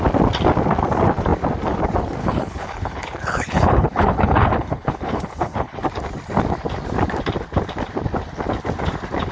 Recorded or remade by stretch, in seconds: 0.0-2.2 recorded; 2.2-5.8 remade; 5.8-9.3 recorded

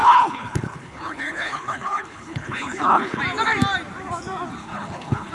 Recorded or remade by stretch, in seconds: 0.0-3.2 remade; 3.2-4.6 recorded; 4.6-5.3 remade

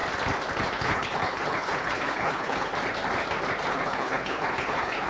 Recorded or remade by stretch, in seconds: 0.0-0.7 recorded; 0.7-2.7 remade; 2.7-3.7 recorded; 3.7-5.1 remade

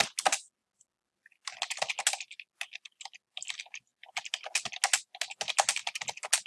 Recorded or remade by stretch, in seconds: 0.0-6.5 recorded

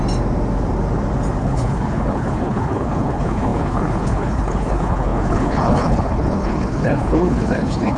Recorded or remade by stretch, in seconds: 0.0-1.4 recorded; 1.4-8.0 remade